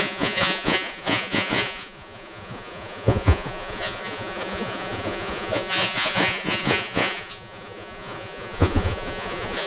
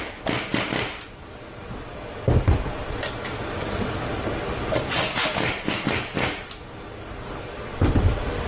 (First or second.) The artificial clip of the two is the first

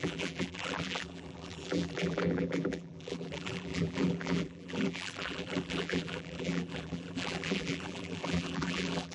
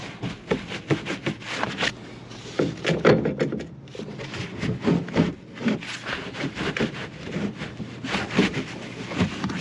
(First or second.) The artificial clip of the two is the first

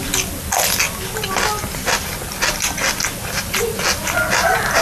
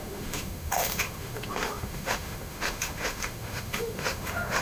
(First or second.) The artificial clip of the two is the second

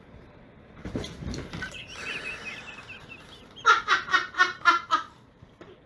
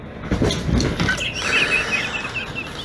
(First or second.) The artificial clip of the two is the first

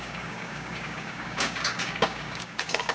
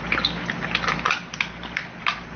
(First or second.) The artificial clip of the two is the first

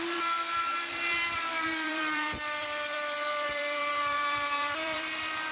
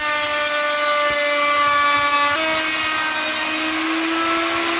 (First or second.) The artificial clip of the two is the first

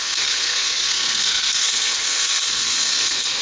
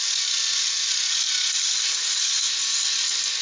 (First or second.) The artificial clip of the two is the first